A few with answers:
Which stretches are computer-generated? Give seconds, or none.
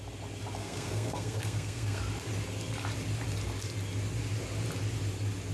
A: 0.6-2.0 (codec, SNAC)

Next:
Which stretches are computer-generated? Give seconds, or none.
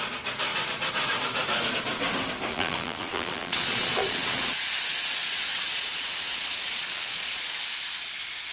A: 2.5-7.5 (vocoder, Vocos)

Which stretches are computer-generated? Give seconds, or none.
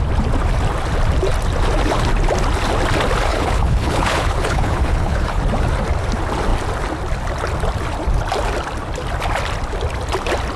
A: 3.3-5.4 (codec, HILCodec)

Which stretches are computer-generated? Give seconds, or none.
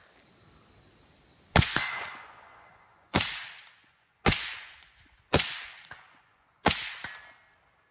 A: 1.5-3.2 (vocoder, Vocos); 3.8-6.7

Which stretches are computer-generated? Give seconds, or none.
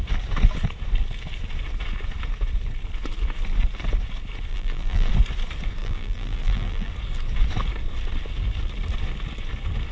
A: 4.5-5.1 (vocoder, BigVGAN v2); 5.8-6.9